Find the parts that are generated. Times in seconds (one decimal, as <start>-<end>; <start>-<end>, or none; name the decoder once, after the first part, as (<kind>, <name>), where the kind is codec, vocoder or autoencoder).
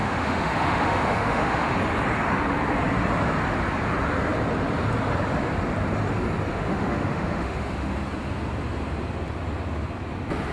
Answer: 0.0-1.7 (autoencoder, DAC-VAE); 6.5-8.0